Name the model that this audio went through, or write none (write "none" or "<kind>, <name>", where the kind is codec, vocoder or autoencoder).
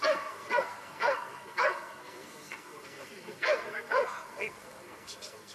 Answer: codec, SNAC